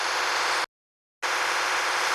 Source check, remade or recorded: recorded